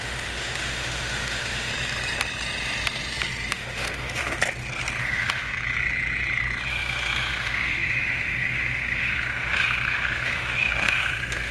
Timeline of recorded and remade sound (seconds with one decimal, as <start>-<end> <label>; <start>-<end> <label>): 0.0-1.7 remade; 1.7-3.5 recorded; 3.5-4.4 remade; 4.4-5.0 recorded; 5.0-5.5 remade; 5.5-6.7 recorded; 6.7-11.5 remade